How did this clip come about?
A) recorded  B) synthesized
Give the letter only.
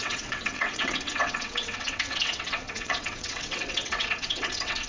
B